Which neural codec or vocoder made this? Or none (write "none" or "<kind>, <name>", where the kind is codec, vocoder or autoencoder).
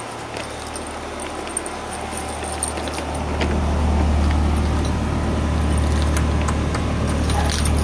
none